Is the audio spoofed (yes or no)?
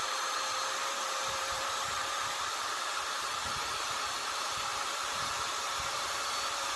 yes